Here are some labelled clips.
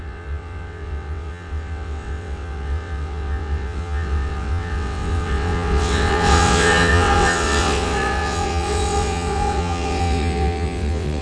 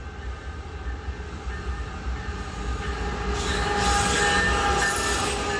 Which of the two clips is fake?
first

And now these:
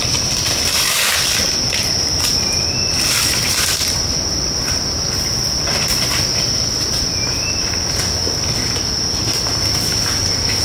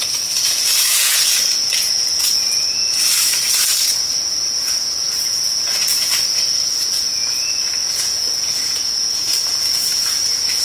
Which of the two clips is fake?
second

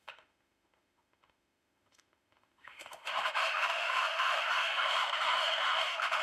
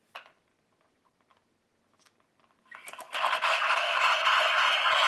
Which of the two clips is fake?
first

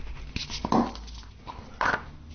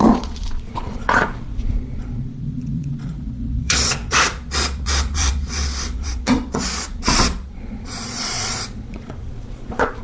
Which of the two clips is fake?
second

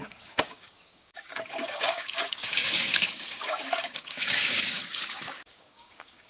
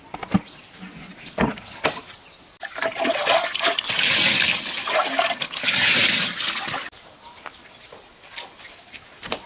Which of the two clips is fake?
first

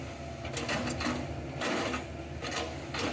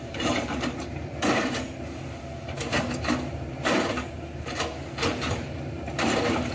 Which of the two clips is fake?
second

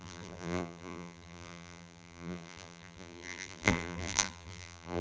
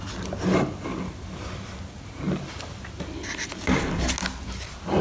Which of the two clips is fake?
first